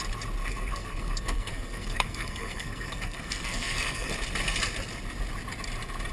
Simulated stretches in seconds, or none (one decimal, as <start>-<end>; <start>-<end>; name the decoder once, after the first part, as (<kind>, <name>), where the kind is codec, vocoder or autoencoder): 0.4-4.1 (codec, SNAC)